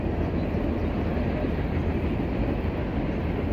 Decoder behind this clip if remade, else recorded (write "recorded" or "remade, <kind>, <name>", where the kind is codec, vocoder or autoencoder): recorded